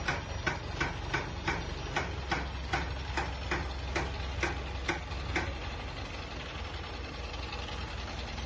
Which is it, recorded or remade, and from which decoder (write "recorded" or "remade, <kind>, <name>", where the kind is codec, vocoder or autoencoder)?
recorded